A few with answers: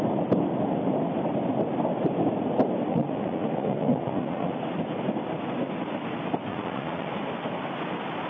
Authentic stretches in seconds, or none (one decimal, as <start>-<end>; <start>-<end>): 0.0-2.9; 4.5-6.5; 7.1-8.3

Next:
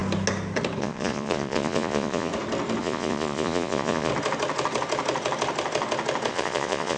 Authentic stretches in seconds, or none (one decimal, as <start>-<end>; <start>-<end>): 0.0-0.8; 2.3-2.8; 4.1-6.3

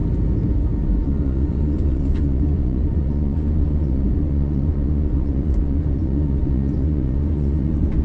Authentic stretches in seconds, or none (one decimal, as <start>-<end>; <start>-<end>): 0.0-0.8

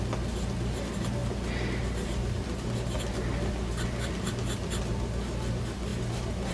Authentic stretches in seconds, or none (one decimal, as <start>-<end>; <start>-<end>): 0.0-6.5

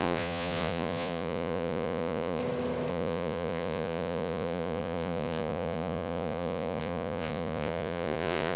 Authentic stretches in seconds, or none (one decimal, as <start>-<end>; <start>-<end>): 2.4-2.9

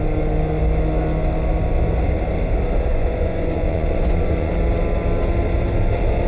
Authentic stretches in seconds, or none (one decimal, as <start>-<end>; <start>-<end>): 0.0-2.9; 4.5-6.3